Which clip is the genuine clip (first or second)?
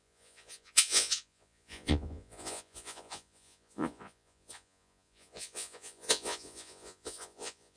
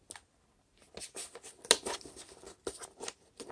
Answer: second